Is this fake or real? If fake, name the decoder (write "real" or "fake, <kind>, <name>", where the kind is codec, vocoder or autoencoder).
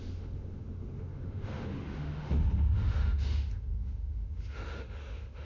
fake, autoencoder, DAC-VAE